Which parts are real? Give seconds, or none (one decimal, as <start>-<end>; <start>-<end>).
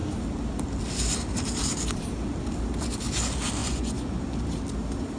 0.0-3.6; 4.2-5.2